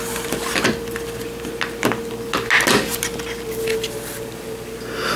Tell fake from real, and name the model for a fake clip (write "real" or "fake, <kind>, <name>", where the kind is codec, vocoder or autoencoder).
real